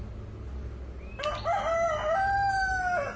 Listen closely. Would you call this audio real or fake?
real